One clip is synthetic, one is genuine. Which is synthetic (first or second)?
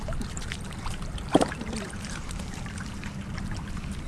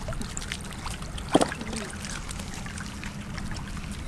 first